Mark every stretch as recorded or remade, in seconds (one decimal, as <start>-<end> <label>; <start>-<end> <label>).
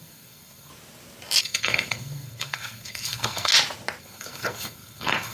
0.0-0.7 remade; 0.7-1.4 recorded; 1.4-3.5 remade; 3.5-4.0 recorded; 4.0-5.3 remade